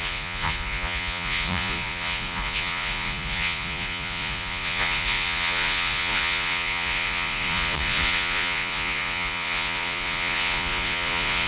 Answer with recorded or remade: remade